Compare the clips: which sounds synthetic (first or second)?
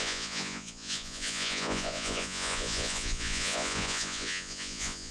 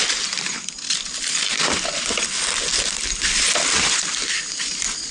first